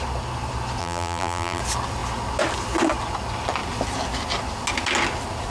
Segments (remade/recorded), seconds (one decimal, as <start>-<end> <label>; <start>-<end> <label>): 0.0-0.8 recorded; 0.8-1.6 remade; 1.6-5.5 recorded